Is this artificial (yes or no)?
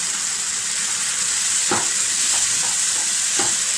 no